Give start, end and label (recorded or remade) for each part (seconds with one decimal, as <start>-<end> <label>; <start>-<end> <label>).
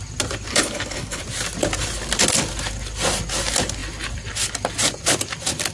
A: 0.0-0.5 recorded; 0.5-1.2 remade; 1.2-5.7 recorded